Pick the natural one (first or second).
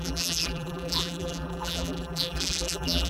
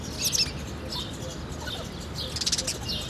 second